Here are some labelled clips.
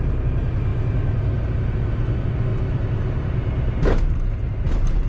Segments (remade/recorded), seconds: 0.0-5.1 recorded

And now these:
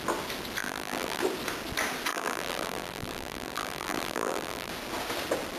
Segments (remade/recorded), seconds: 0.0-0.6 recorded; 0.6-1.2 remade; 1.2-2.1 recorded; 2.1-4.7 remade; 4.7-5.6 recorded